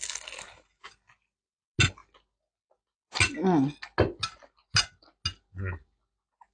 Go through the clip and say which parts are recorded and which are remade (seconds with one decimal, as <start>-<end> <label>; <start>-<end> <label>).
0.0-6.5 recorded